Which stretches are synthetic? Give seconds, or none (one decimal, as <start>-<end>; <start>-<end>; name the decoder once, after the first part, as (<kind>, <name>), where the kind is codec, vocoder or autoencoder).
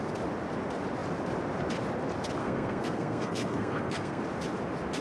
2.4-4.2 (codec, SNAC)